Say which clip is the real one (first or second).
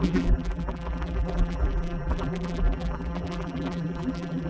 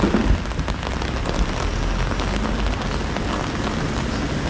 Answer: second